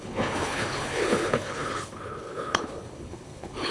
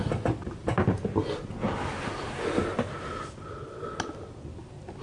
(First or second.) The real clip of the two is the second